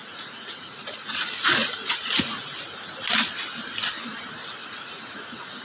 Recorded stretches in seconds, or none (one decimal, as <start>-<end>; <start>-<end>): 2.5-4.6